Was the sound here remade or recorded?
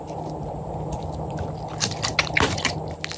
recorded